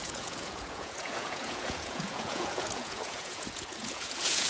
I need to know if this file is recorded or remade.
remade